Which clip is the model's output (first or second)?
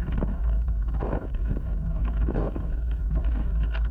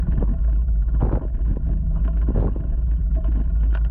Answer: first